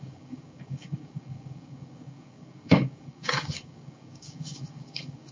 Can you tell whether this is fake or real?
fake